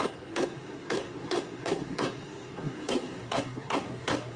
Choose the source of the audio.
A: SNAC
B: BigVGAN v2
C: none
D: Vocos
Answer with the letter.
A